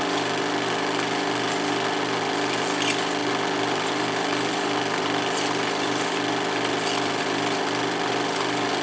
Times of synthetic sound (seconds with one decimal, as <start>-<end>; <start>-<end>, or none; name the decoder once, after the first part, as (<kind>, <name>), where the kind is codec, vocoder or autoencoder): 3.2-8.1 (vocoder, BigVGAN v2)